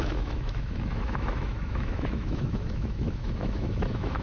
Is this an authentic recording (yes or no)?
no